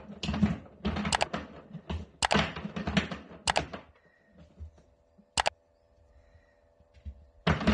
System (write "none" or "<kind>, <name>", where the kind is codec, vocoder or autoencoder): none